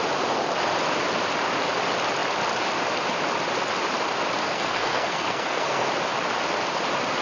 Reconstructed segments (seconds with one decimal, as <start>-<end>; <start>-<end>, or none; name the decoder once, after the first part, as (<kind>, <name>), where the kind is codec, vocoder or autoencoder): 4.4-5.9 (codec, SNAC)